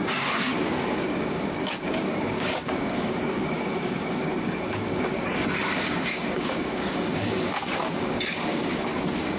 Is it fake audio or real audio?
fake